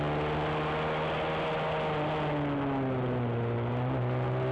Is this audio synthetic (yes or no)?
no